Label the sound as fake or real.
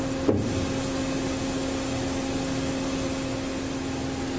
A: real